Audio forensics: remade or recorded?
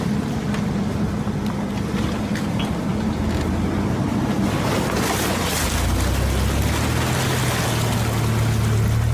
recorded